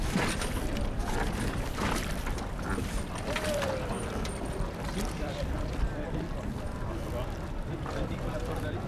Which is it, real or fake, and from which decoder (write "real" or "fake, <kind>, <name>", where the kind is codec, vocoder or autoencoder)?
fake, vocoder, BigVGAN v2